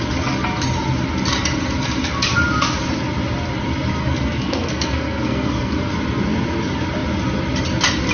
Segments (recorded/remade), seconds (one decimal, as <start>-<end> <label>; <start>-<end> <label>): 0.0-4.0 recorded; 4.0-5.9 remade; 5.9-8.1 recorded